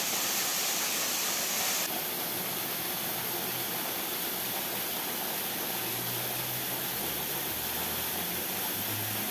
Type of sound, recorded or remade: recorded